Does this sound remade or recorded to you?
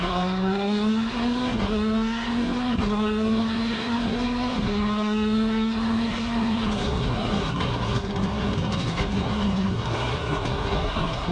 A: remade